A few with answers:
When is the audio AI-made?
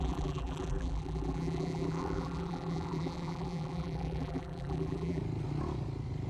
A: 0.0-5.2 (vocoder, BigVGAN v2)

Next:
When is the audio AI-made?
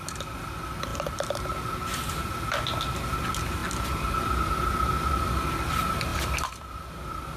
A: none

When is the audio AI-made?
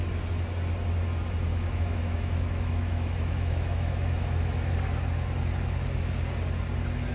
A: 1.5-4.7 (autoencoder, DAC-VAE)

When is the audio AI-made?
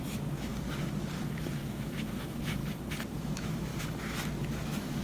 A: 0.0-0.5 (autoencoder, DAC-VAE); 1.2-2.6; 3.1-3.7; 4.4-5.0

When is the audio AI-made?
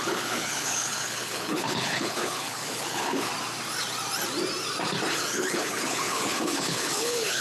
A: 0.0-3.3 (codec, HILCodec); 5.1-7.4